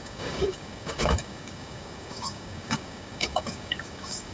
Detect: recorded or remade remade